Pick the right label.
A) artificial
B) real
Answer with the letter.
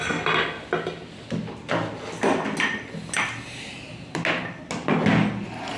B